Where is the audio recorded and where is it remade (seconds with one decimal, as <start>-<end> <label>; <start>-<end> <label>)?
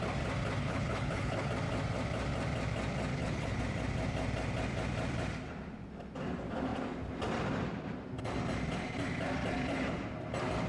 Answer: 0.0-0.6 recorded; 0.6-1.5 remade; 1.5-3.1 recorded; 3.1-3.6 remade; 3.6-10.7 recorded